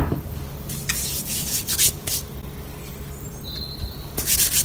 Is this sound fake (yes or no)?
no